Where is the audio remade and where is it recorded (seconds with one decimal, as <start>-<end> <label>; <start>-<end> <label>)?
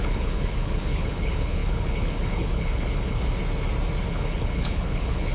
0.0-3.4 remade; 3.4-4.0 recorded; 4.0-5.3 remade